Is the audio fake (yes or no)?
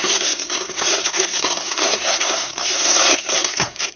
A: yes